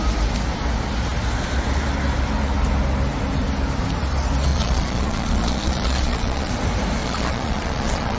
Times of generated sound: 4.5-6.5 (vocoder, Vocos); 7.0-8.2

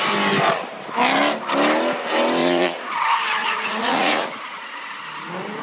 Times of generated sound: 2.4-2.9 (vocoder, Vocos); 3.4-5.0

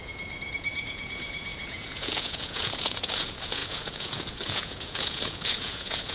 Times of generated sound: 0.0-6.1 (vocoder, Vocos)

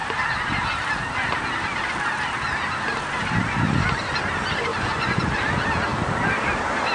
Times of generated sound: 4.7-5.3 (vocoder, Vocos)